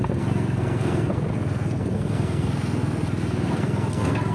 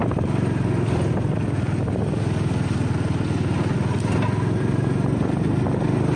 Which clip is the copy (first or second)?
first